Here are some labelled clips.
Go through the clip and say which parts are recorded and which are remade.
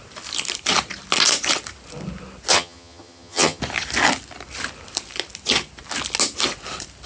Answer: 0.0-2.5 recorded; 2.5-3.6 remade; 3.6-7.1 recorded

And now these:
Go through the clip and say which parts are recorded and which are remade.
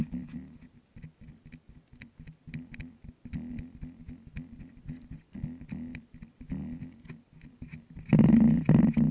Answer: 0.0-9.1 recorded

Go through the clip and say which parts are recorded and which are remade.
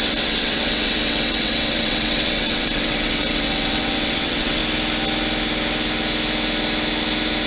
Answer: 0.0-4.6 remade; 4.6-7.5 recorded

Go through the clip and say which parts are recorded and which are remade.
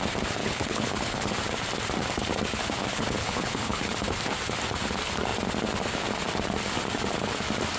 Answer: 0.0-0.4 recorded; 0.4-1.3 remade; 1.3-2.9 recorded; 2.9-3.8 remade; 3.8-7.8 recorded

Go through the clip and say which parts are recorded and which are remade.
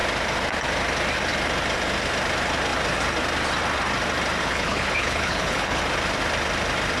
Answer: 0.0-4.4 recorded; 4.4-5.8 remade; 5.8-7.0 recorded